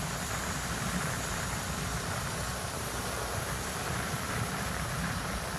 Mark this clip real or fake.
fake